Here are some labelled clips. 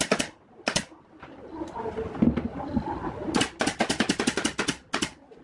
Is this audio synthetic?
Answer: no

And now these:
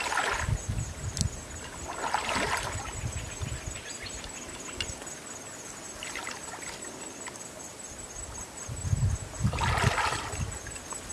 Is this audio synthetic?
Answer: no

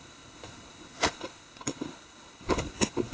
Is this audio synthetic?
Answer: yes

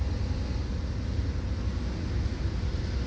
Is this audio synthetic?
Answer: no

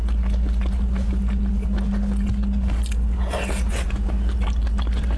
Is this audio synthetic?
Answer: no